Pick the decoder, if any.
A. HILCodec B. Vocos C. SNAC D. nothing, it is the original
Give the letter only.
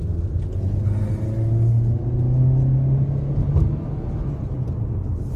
D